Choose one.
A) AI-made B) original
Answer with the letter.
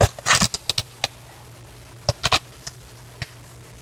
B